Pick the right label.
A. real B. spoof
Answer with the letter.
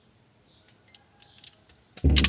A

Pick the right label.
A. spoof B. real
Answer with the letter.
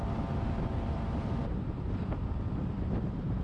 A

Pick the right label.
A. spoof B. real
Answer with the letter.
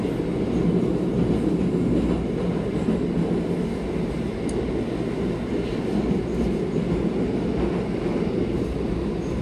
B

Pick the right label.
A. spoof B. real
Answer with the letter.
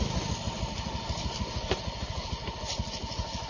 B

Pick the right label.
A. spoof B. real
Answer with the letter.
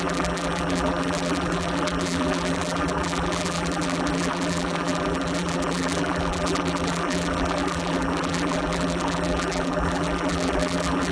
A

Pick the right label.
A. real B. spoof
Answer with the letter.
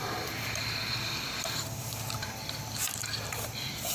B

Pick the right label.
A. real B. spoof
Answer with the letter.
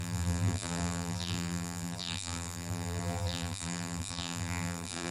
B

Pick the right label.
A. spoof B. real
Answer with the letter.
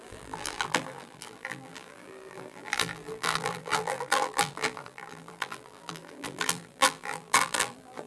A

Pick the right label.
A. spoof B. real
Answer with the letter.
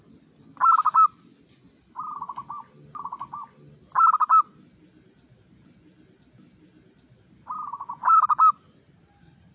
B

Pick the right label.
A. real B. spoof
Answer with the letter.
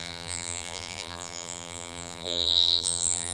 B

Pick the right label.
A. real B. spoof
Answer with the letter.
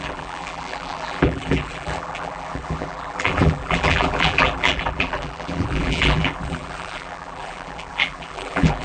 B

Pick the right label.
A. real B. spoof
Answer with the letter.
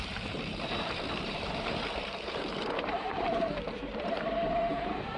B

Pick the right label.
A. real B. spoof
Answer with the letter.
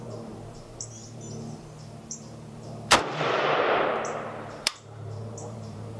B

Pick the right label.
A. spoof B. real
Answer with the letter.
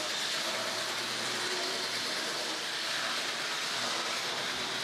A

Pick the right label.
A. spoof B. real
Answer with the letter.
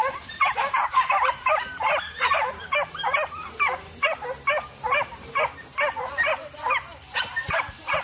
A